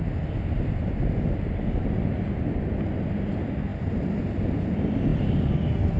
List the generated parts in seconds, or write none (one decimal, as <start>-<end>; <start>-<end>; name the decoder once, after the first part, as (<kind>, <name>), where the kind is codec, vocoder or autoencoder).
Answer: none